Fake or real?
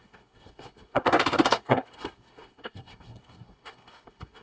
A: fake